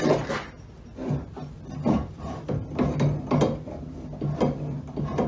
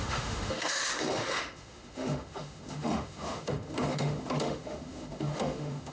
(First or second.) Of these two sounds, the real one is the first